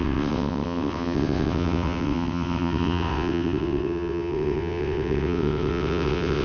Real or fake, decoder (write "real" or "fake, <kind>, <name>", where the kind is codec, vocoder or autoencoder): fake, vocoder, WaveNeXt